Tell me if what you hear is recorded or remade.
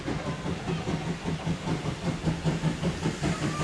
recorded